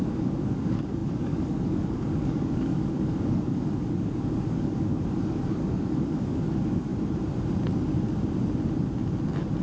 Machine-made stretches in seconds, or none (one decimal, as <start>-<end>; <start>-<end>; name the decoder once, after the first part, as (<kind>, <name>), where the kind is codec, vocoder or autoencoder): 0.0-6.9 (codec, DAC)